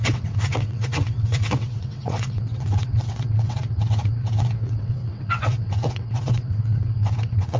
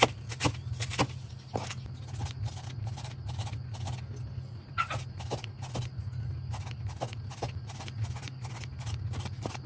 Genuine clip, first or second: second